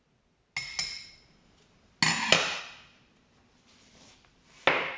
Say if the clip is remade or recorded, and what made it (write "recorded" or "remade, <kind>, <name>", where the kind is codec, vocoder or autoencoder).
recorded